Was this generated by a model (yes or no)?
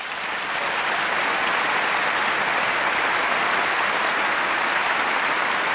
no